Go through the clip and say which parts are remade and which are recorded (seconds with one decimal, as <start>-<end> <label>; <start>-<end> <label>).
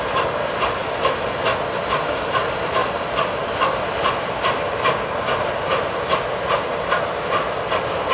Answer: 0.0-8.1 recorded